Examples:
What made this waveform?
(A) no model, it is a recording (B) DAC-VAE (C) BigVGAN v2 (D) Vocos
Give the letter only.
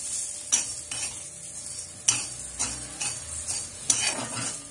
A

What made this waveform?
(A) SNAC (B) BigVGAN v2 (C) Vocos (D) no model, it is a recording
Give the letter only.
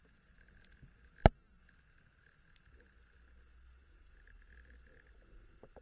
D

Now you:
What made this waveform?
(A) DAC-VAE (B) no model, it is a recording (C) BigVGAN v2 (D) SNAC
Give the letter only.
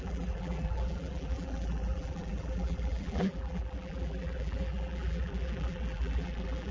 C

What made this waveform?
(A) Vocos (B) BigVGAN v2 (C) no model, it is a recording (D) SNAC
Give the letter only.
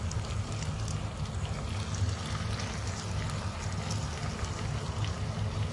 C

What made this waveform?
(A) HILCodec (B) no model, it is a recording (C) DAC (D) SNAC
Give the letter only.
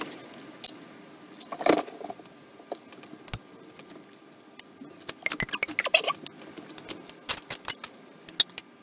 B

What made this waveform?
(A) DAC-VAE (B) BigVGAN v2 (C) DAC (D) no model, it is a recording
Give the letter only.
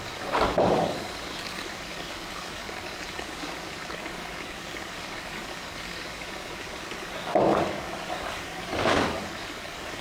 C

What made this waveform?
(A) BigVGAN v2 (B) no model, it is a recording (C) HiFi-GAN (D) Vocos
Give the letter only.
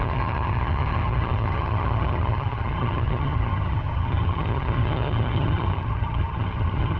C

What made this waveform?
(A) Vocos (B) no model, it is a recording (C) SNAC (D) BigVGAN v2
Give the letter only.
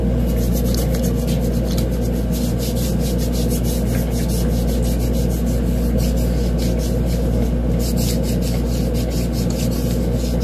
B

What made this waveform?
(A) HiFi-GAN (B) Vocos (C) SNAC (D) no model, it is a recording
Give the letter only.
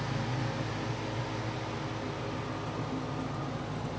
D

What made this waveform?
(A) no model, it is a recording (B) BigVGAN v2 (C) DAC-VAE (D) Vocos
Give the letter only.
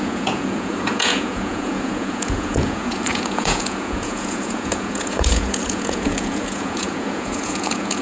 D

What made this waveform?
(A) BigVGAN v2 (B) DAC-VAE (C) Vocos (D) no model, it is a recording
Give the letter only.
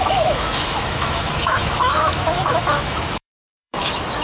B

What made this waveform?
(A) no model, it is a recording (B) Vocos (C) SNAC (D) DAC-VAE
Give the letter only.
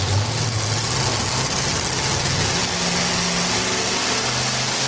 A